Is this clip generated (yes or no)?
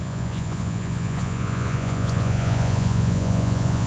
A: yes